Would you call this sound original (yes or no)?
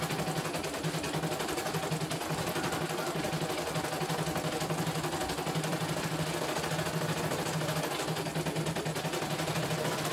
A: yes